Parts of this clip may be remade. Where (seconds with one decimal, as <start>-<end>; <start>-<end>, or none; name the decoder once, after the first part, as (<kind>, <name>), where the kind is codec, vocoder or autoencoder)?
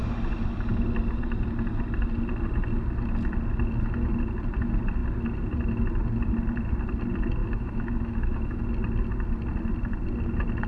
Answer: 7.4-8.6 (autoencoder, DAC-VAE)